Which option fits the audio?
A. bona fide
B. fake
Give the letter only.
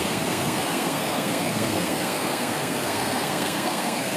B